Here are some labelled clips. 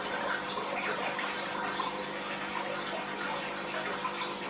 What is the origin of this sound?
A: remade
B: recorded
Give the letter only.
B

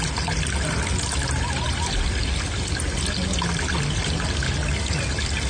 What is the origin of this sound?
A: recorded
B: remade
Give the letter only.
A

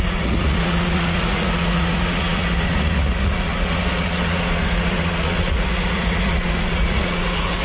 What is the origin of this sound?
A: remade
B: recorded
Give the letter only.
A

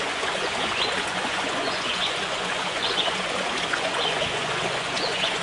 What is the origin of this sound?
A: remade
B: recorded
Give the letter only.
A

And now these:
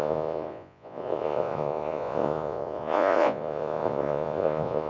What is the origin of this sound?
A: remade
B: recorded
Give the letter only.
A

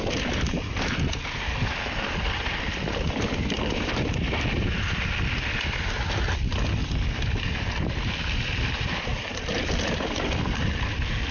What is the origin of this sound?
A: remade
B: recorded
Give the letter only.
B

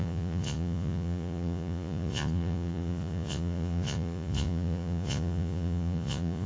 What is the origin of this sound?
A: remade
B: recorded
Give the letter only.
A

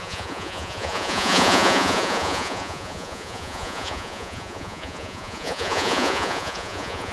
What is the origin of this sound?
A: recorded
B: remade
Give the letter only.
B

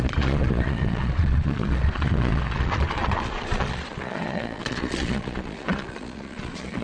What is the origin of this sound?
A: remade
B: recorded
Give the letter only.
A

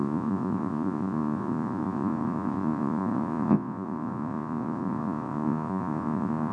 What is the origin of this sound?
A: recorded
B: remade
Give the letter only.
B